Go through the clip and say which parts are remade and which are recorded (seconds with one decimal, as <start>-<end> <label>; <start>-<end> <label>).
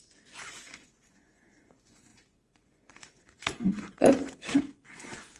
0.0-5.4 remade